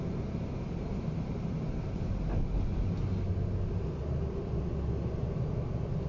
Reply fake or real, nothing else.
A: real